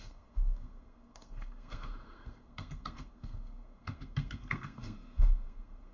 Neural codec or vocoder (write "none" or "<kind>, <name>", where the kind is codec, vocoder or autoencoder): codec, SNAC